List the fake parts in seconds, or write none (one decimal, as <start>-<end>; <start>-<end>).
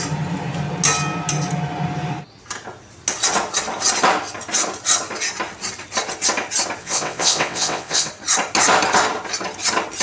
6.8-8.1